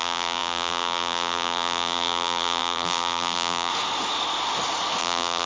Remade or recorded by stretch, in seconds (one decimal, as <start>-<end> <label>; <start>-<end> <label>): 0.0-3.7 remade; 3.7-5.0 recorded; 5.0-5.5 remade